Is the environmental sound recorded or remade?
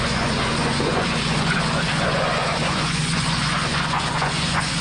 remade